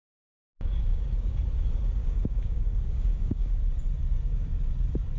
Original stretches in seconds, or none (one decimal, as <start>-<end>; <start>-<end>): 0.0-0.9; 1.4-2.0; 3.5-5.2